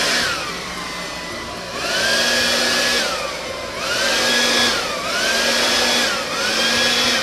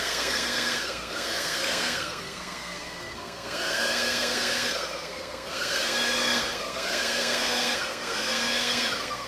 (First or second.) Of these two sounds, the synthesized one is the second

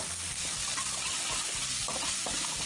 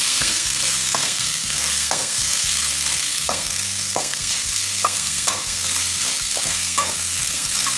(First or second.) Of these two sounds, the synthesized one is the second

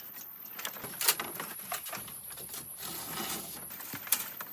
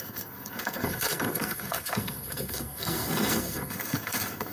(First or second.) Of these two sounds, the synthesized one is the second